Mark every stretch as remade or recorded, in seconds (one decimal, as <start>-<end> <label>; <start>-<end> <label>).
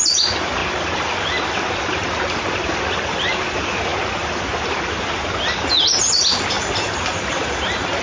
0.0-8.0 recorded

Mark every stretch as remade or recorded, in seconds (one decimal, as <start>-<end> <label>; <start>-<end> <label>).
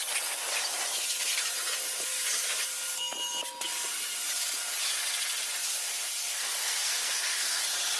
0.0-6.3 recorded; 6.3-7.6 remade; 7.6-8.0 recorded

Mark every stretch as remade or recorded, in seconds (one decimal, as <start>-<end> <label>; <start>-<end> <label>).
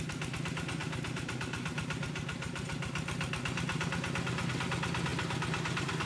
0.0-6.1 recorded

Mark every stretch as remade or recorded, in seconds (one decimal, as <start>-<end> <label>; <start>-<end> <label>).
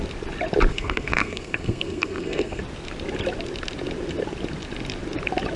0.0-0.7 recorded; 0.7-2.6 remade; 2.6-5.6 recorded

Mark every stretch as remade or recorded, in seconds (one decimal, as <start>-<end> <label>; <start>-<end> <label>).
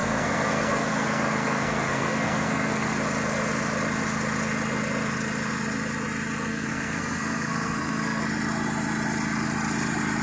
0.0-2.9 remade; 2.9-6.5 recorded; 6.5-8.2 remade; 8.2-10.2 recorded